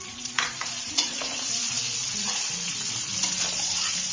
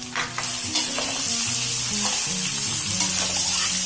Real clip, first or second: second